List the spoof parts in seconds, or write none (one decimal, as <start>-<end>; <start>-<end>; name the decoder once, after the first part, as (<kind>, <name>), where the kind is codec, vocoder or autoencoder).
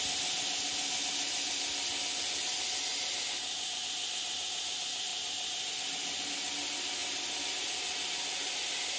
none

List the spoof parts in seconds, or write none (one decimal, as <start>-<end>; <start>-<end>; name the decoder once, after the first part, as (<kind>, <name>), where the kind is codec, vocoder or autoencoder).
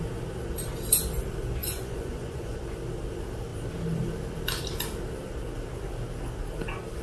1.6-2.6 (vocoder, Vocos)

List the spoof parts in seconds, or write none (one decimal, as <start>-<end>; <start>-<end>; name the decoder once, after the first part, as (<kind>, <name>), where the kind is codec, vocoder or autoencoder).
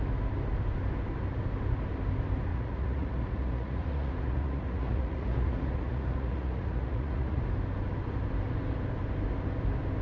2.5-7.4 (vocoder, Vocos)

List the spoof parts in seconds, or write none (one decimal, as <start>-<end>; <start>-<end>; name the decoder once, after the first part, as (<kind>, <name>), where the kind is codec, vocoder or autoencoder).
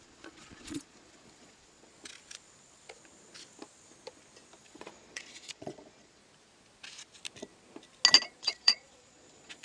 0.0-1.9 (vocoder, Vocos); 4.6-6.2; 8.4-9.6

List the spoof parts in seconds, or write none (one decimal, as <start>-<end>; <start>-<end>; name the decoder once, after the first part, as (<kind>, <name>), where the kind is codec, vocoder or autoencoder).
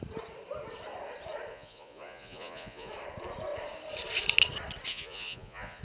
1.5-2.9 (vocoder, Vocos); 4.9-5.8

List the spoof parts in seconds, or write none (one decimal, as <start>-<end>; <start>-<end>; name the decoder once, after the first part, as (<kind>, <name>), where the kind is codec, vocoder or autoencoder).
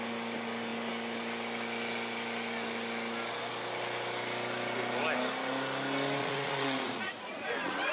6.2-7.9 (vocoder, Vocos)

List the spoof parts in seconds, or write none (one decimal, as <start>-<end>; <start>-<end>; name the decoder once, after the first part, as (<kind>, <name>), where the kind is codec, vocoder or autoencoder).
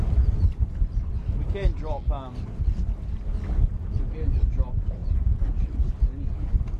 none